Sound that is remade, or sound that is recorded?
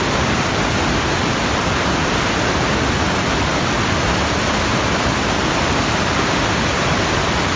recorded